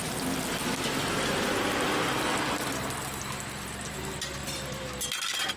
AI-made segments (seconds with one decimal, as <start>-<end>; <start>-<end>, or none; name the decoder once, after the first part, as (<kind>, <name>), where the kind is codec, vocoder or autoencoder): none